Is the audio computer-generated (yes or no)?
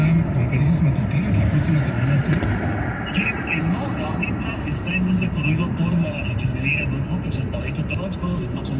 no